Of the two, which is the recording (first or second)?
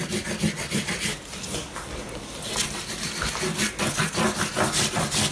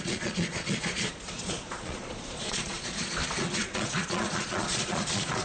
first